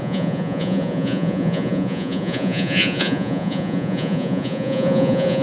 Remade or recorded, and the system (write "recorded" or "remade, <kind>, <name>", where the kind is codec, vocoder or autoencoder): remade, vocoder, Vocos